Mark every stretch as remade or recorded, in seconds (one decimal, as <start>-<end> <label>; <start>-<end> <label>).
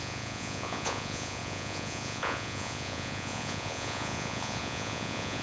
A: 0.0-5.4 remade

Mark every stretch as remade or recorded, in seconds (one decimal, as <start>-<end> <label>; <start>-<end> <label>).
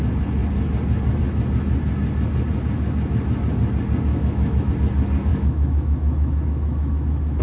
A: 0.0-4.1 recorded; 4.1-4.7 remade; 4.7-5.3 recorded; 5.3-7.4 remade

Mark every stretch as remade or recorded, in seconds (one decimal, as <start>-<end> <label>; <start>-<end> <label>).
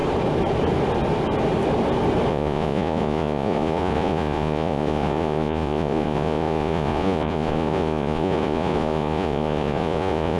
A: 0.0-2.3 recorded; 2.3-10.4 remade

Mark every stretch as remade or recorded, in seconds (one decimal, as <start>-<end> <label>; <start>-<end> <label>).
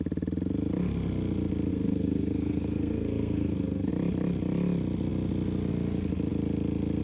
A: 0.0-1.7 recorded; 1.7-3.9 remade; 3.9-7.0 recorded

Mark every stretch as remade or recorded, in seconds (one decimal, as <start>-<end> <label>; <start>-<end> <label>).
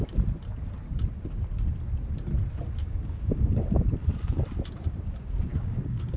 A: 0.0-2.8 recorded; 2.8-3.6 remade; 3.6-5.5 recorded; 5.5-6.2 remade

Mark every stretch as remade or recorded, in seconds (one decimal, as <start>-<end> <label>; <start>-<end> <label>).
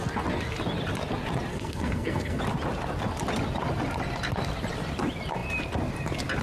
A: 0.0-1.5 recorded; 1.5-2.4 remade; 2.4-6.4 recorded